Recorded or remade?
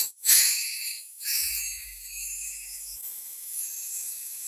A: remade